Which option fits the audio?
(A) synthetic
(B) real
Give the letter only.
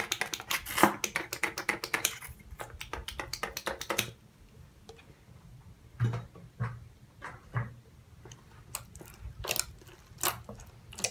B